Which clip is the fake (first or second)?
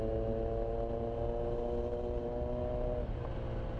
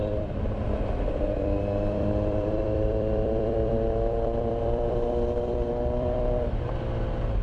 second